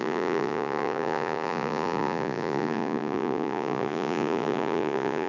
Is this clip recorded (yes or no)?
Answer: no